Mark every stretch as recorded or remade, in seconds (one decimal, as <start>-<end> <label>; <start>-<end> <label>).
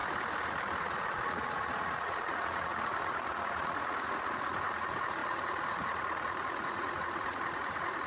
0.0-0.8 recorded; 0.8-8.1 remade